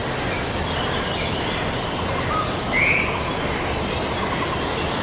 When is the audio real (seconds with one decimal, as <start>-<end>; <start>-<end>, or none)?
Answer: 0.0-5.0

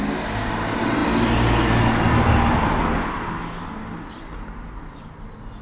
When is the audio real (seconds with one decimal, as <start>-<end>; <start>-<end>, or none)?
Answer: 0.0-5.6

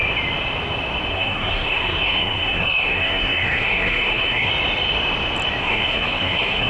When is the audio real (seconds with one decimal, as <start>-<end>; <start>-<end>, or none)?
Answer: 0.0-1.1; 4.5-5.6

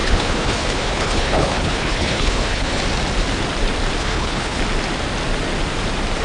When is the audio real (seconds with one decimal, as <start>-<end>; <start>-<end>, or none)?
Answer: 2.8-4.0; 4.6-6.2